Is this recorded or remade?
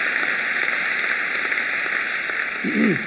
recorded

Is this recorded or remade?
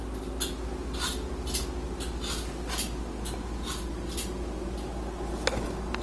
recorded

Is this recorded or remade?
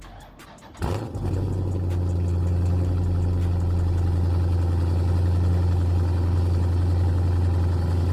recorded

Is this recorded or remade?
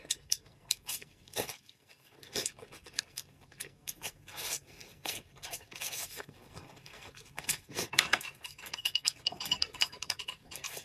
remade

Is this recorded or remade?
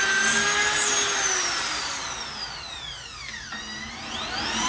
recorded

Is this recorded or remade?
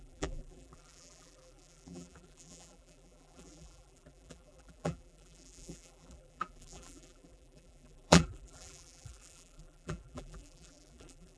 remade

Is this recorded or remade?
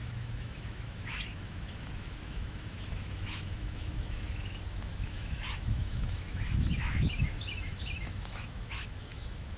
remade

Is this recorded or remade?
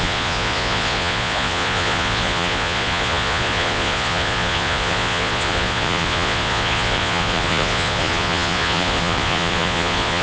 remade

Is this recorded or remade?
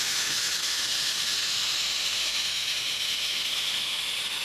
remade